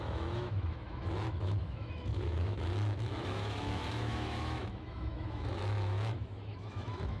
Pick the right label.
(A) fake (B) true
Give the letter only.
A